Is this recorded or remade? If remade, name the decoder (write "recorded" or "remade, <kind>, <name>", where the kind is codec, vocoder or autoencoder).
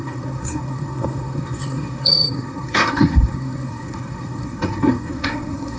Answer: remade, codec, SNAC